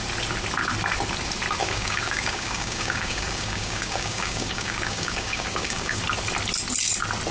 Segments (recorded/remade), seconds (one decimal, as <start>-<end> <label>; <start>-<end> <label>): 0.0-1.6 recorded; 1.6-6.0 remade; 6.0-7.3 recorded